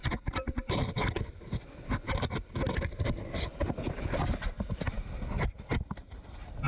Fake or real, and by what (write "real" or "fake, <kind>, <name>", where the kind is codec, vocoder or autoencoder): real